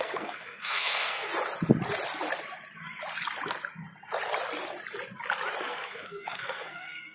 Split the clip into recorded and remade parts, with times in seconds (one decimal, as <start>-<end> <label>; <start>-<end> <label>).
0.0-1.3 remade; 1.3-5.6 recorded; 5.6-7.1 remade